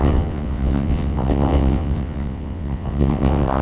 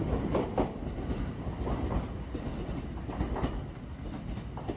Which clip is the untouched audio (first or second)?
second